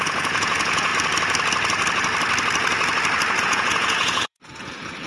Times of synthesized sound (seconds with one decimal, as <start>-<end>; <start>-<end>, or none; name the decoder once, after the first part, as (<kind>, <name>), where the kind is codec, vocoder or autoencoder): 0.0-0.9 (vocoder, Vocos); 3.4-5.1